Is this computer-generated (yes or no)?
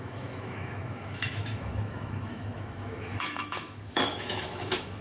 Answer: yes